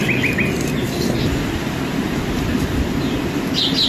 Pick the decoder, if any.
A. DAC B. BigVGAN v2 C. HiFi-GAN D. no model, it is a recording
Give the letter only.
D